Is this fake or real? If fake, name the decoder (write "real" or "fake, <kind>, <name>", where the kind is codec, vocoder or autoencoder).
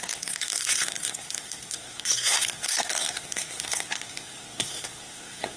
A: fake, codec, SNAC